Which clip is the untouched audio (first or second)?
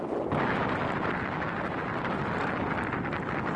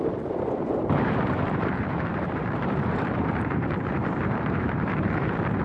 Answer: first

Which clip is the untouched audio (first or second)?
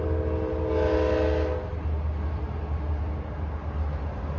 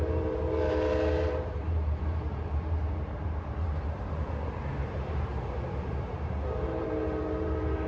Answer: first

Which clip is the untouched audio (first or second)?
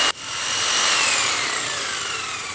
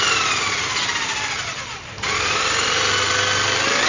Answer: second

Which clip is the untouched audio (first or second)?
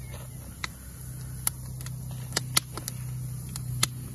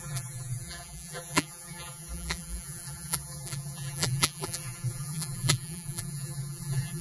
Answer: first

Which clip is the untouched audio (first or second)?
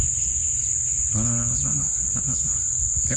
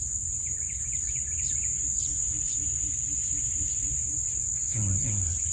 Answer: first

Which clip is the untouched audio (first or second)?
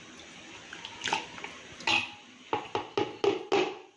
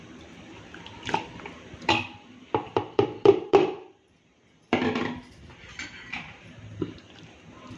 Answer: first